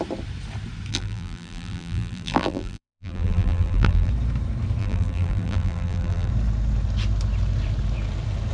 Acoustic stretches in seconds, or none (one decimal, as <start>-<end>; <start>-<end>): 0.0-0.9; 4.1-4.8; 6.3-8.5